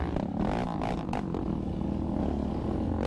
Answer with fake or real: real